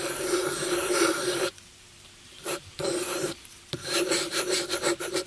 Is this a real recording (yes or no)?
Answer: no